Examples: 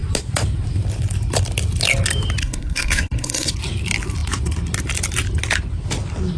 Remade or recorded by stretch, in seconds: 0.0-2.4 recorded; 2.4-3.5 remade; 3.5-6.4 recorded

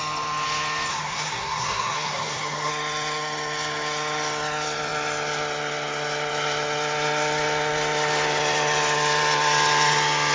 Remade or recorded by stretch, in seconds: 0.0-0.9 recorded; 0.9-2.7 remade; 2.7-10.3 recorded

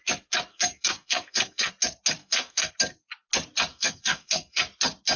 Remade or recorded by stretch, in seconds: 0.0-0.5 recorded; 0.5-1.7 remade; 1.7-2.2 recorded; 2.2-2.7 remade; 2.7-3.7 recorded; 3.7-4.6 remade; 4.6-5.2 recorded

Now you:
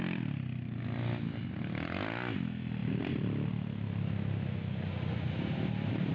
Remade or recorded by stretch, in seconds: 0.0-6.1 recorded

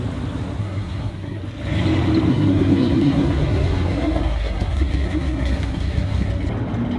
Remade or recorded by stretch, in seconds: 0.0-0.6 recorded; 0.6-1.4 remade; 1.4-2.3 recorded; 2.3-6.3 remade; 6.3-7.0 recorded

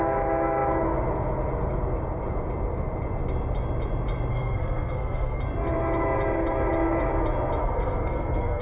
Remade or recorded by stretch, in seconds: 0.0-4.3 recorded; 4.3-5.4 remade; 5.4-7.6 recorded; 7.6-8.6 remade

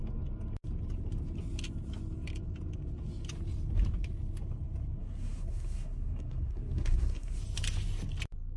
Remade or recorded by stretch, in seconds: 0.0-5.0 recorded; 5.0-7.4 remade; 7.4-8.6 recorded

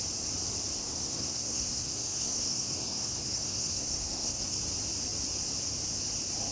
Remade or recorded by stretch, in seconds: 0.0-0.7 recorded; 0.7-4.6 remade; 4.6-6.5 recorded